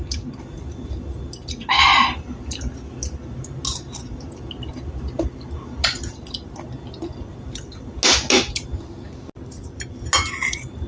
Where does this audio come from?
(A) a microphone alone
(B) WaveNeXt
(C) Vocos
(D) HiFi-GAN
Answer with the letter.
A